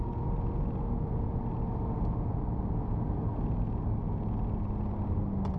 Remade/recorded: recorded